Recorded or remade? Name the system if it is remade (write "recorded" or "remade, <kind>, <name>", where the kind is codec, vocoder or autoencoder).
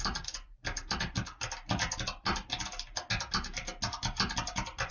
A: recorded